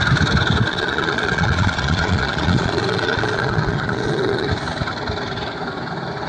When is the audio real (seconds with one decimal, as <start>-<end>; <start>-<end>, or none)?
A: 0.0-0.7; 4.5-6.3